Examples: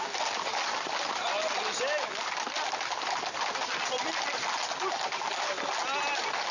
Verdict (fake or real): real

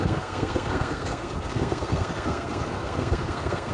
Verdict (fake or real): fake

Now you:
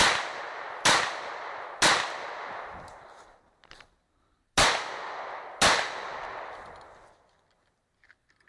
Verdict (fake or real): real